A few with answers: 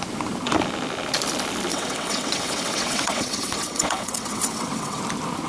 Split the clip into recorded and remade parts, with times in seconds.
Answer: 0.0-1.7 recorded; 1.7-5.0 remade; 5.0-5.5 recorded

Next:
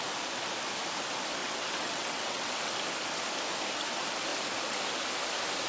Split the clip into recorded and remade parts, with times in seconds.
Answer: 0.0-1.4 recorded; 1.4-2.7 remade; 2.7-5.7 recorded